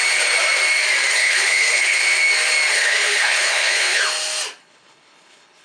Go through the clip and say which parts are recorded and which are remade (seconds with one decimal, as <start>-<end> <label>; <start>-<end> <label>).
0.0-1.1 recorded; 1.1-2.0 remade; 2.0-2.7 recorded; 2.7-4.0 remade; 4.0-4.6 recorded; 4.6-5.6 remade